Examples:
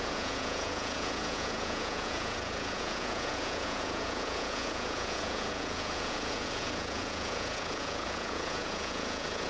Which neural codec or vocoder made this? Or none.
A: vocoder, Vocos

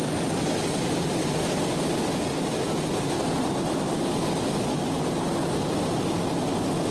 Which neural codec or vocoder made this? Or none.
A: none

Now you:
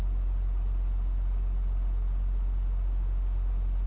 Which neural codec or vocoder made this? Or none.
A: none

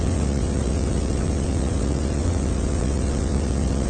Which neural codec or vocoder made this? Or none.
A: vocoder, WaveNeXt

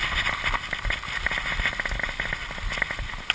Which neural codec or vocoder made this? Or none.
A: none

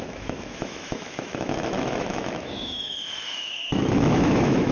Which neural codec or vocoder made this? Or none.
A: autoencoder, DAC-VAE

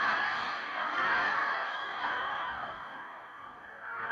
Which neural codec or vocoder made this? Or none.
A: codec, DAC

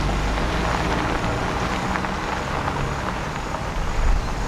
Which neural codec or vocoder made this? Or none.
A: none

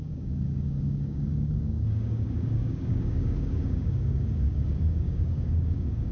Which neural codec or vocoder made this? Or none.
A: codec, DAC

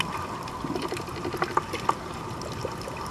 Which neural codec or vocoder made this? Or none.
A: none